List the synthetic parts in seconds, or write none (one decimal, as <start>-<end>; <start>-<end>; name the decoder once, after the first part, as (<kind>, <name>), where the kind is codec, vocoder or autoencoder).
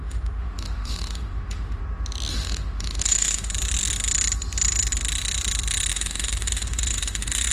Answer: 0.0-1.8 (autoencoder, DAC-VAE); 2.3-3.5; 5.9-7.5